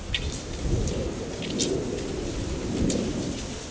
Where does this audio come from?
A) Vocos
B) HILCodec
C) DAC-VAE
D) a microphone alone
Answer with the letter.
D